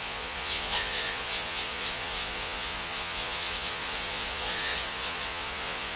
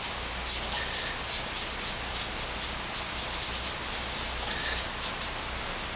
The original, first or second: second